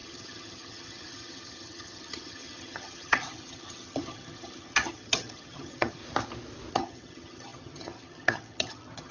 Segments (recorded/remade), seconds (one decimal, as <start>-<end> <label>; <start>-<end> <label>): 0.0-6.0 remade; 6.0-6.7 recorded; 6.7-9.1 remade